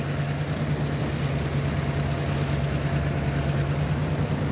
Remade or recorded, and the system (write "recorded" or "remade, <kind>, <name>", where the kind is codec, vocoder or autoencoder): recorded